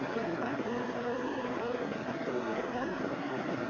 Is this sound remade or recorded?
remade